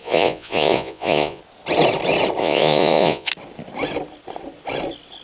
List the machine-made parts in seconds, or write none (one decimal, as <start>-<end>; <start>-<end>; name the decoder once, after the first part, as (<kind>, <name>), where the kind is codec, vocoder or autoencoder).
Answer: 0.0-1.4 (vocoder, Vocos); 2.4-3.3